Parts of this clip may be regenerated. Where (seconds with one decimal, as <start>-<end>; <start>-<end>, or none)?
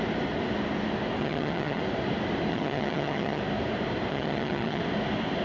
1.2-1.8; 2.5-3.4; 4.1-4.8